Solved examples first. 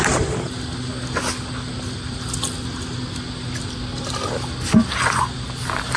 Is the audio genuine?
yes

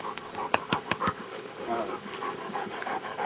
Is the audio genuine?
no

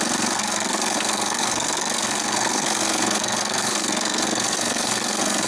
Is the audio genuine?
no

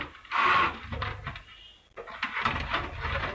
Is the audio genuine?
yes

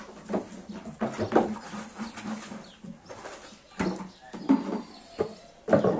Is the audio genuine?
yes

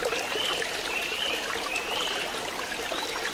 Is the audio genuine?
yes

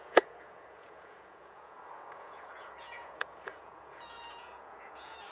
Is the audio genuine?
no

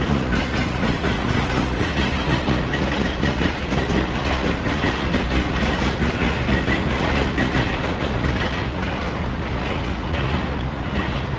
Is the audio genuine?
no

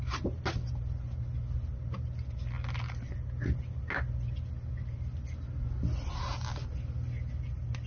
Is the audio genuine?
yes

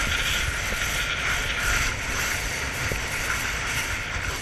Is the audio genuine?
yes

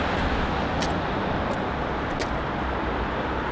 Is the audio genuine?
yes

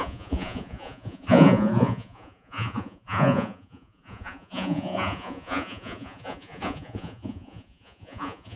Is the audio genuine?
no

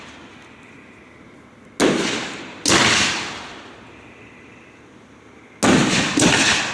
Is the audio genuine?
yes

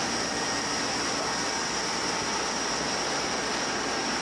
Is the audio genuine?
yes